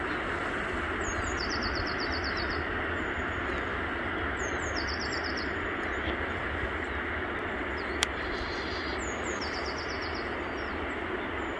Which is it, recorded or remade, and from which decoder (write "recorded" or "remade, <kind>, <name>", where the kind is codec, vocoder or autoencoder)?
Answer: recorded